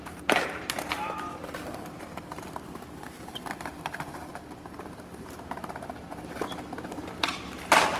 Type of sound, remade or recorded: remade